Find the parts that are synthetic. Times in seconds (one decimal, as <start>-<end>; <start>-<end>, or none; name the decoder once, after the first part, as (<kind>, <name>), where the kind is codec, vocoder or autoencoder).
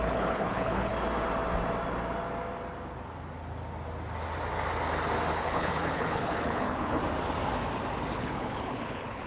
0.0-0.9 (codec, HILCodec); 5.3-7.0; 8.1-9.3